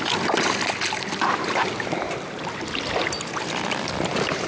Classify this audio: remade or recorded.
recorded